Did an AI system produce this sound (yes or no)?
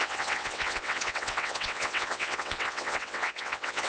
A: yes